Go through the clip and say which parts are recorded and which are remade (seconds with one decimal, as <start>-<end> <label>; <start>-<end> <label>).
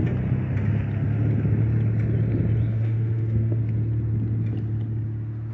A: 0.0-2.7 recorded; 2.7-3.6 remade; 3.6-5.5 recorded